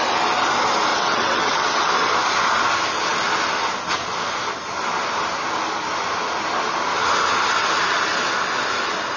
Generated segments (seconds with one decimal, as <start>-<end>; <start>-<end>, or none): 0.9-1.9